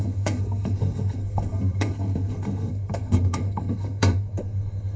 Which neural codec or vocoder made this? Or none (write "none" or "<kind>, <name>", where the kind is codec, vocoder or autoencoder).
codec, SNAC